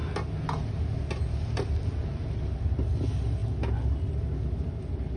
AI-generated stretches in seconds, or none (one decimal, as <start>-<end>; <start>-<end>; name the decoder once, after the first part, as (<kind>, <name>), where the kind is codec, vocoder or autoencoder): none